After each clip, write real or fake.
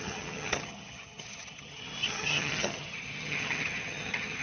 fake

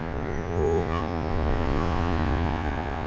fake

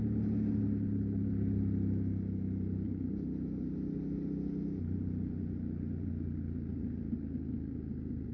real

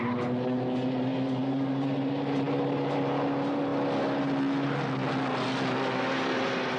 real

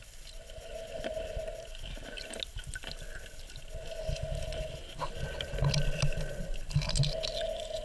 real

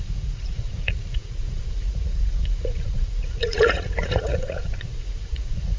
fake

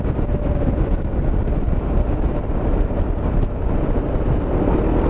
real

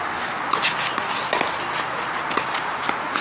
real